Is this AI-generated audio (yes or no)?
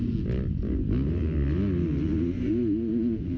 no